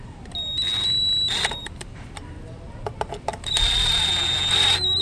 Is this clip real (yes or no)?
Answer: yes